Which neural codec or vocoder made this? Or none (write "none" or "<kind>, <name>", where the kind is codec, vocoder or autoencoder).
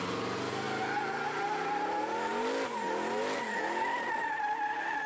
none